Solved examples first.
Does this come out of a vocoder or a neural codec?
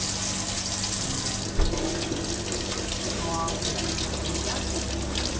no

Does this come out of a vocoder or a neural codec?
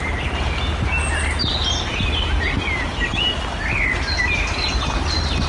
no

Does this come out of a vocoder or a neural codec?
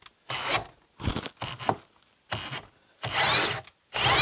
no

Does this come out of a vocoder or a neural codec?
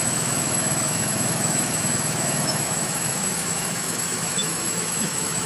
yes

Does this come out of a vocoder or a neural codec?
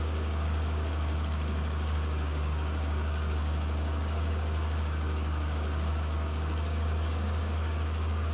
yes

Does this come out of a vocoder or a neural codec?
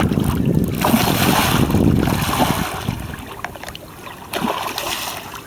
no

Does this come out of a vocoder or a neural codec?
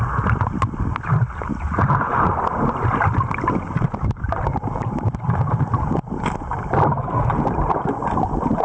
no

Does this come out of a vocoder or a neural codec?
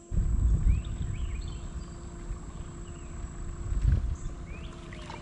no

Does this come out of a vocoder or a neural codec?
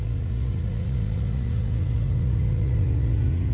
yes